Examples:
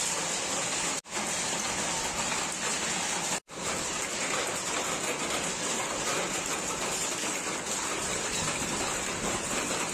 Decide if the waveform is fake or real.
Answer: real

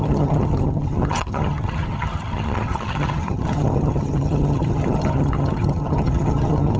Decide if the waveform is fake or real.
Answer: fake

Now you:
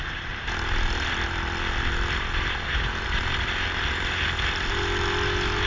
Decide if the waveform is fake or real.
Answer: real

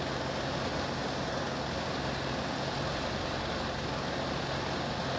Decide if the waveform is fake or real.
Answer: real